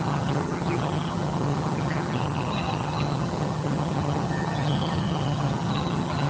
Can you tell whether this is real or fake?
fake